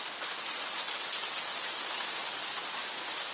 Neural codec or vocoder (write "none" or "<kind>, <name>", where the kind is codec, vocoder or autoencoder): none